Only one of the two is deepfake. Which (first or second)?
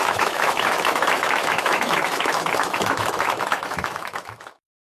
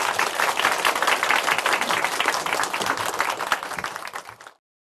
first